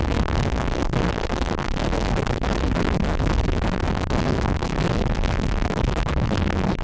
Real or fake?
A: fake